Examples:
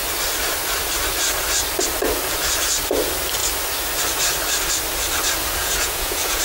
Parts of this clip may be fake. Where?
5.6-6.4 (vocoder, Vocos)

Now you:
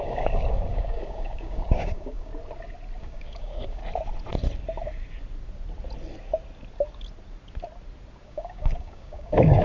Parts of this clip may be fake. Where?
0.0-2.3 (codec, DAC); 3.0-3.8; 8.3-9.6

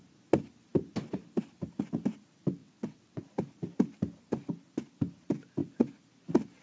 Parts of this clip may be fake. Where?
2.6-3.2 (vocoder, WaveNeXt)

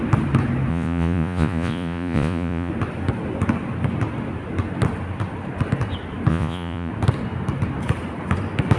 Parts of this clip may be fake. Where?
0.7-2.7 (vocoder, Vocos); 6.3-6.9

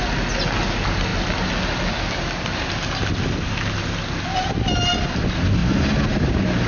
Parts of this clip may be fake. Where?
none

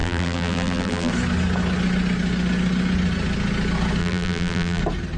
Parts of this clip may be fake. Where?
0.0-1.1 (vocoder, BigVGAN v2); 4.0-4.8

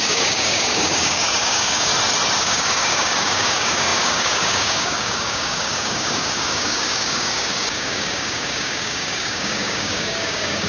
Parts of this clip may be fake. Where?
0.0-1.9 (codec, DAC); 2.4-10.7